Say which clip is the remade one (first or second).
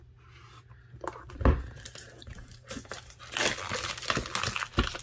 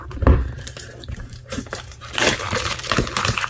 second